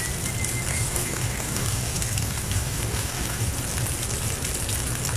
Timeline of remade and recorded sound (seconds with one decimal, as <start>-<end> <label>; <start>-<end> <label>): 0.0-0.7 recorded; 0.7-3.5 remade; 3.5-5.2 recorded